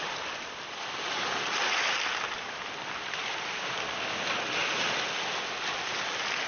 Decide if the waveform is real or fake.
real